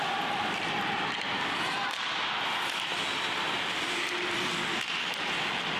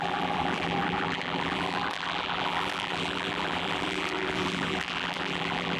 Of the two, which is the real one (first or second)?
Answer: first